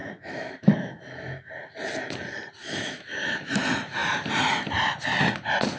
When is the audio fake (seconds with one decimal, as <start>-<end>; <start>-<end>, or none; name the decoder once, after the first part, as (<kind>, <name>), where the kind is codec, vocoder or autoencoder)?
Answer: 0.0-1.5 (autoencoder, DAC-VAE); 2.6-3.5